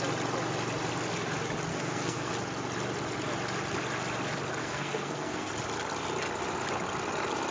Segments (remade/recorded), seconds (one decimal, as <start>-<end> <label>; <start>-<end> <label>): 0.0-1.7 recorded; 1.7-2.3 remade; 2.3-4.6 recorded; 4.6-5.5 remade; 5.5-7.5 recorded